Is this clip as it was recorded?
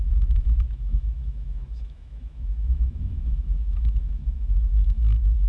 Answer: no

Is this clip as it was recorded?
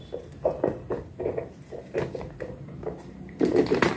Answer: yes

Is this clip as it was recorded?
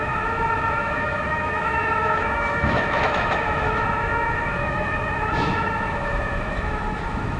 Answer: no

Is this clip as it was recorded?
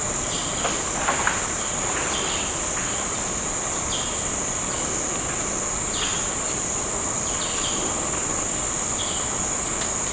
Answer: yes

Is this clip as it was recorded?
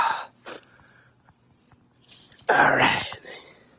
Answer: yes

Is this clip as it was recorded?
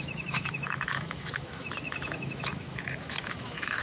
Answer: no